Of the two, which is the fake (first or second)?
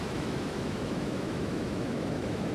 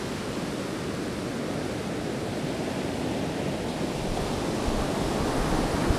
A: first